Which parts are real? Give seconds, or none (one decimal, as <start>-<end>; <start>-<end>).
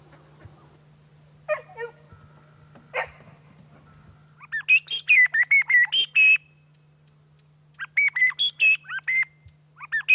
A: 0.0-10.1